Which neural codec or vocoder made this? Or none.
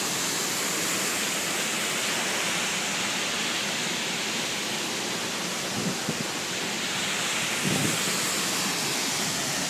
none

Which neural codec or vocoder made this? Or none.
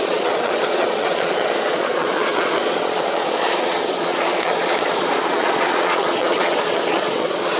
vocoder, Vocos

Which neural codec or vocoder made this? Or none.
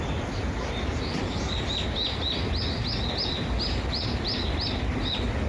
none